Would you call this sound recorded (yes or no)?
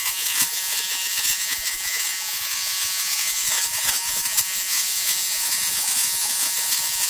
no